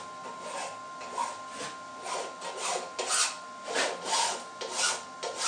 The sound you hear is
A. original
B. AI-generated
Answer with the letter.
A